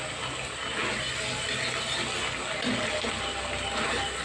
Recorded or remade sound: recorded